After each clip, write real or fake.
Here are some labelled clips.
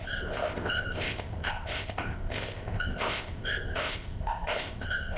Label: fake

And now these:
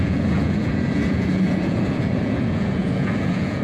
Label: fake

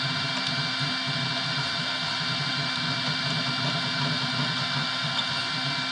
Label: real